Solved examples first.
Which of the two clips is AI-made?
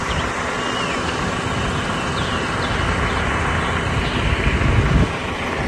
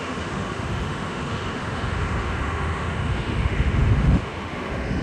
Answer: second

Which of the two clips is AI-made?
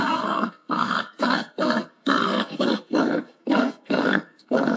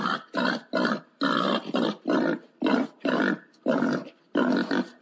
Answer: first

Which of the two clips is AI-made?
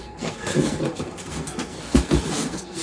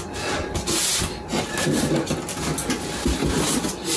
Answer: first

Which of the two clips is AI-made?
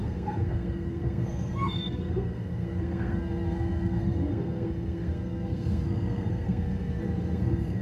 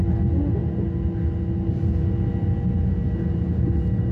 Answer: first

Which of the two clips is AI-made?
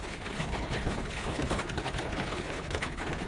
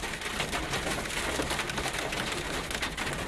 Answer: first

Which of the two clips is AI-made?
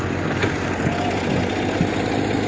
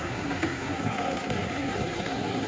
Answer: second